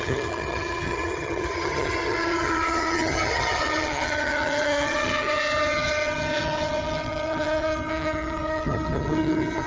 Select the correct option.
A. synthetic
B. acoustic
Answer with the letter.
A